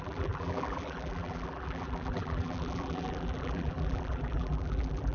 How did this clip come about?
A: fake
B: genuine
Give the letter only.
A